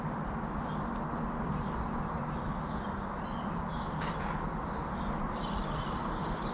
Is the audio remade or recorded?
recorded